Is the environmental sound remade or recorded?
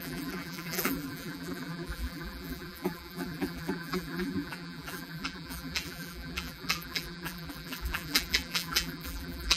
remade